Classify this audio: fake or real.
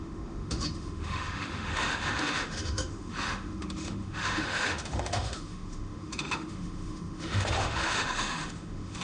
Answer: fake